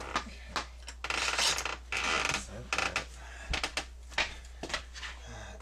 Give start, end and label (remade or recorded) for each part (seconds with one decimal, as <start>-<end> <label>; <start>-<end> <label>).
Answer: 0.0-5.6 recorded